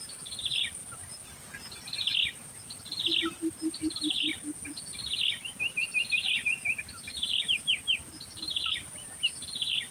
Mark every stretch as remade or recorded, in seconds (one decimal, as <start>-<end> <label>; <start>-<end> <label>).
0.0-0.8 remade; 0.8-3.2 recorded; 3.2-4.3 remade; 4.3-6.9 recorded; 6.9-9.9 remade